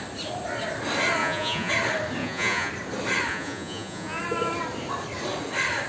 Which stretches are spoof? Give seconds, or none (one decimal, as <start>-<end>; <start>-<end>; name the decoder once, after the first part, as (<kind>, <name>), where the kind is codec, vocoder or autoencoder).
1.2-1.7 (vocoder, Vocos); 2.2-2.7; 3.3-4.2